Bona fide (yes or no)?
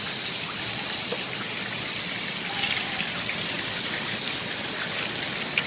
yes